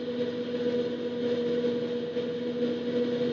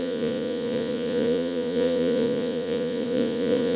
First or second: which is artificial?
second